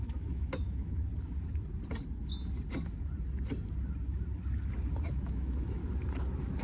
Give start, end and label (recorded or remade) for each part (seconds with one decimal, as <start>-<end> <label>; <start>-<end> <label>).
0.0-1.1 remade; 1.1-5.1 recorded; 5.1-5.8 remade; 5.8-6.6 recorded